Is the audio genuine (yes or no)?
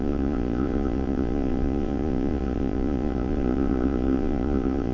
no